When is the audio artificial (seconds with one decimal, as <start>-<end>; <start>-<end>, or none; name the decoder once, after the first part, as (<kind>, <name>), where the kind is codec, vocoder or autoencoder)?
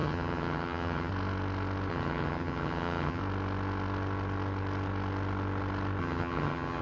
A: 0.0-1.1 (vocoder, HiFi-GAN); 1.9-3.2; 6.0-6.8